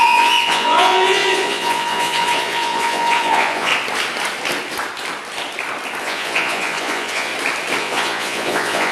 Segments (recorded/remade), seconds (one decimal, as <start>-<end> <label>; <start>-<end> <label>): 0.0-3.7 remade; 3.7-6.0 recorded; 6.0-7.3 remade; 7.3-7.8 recorded; 7.8-8.9 remade